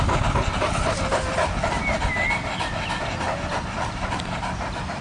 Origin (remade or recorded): recorded